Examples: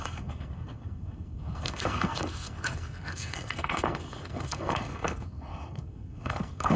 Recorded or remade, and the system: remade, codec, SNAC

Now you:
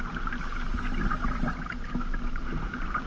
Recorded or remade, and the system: recorded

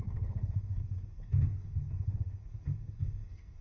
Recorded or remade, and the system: remade, codec, SNAC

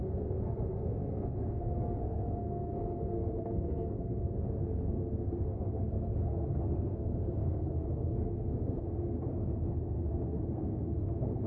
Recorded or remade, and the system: remade, codec, SNAC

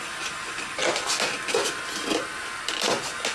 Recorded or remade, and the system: recorded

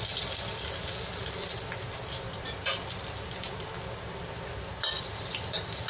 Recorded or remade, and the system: recorded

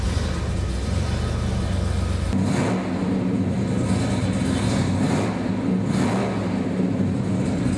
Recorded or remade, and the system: recorded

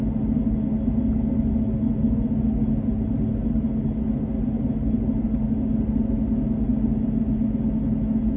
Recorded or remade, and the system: recorded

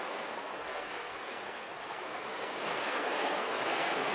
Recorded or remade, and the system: remade, codec, SNAC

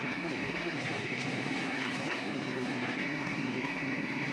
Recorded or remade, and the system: remade, codec, SNAC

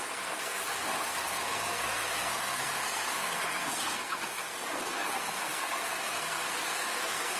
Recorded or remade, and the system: remade, codec, SNAC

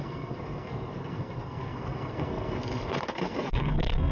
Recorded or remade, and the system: remade, codec, SNAC